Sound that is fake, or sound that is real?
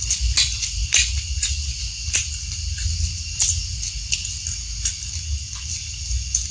real